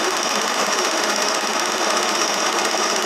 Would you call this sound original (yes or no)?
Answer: no